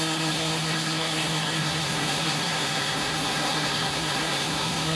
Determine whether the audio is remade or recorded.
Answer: remade